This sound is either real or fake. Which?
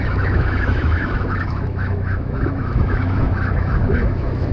fake